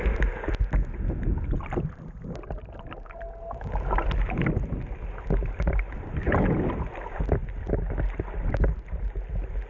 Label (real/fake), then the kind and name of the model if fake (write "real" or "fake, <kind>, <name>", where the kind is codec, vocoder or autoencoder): real